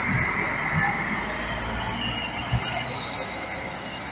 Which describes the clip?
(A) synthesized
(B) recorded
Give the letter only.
B